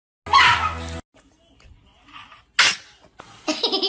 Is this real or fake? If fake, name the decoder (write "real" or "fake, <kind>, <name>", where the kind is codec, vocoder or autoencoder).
real